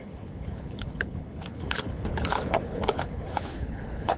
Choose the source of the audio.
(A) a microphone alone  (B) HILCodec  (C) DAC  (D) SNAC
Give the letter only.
B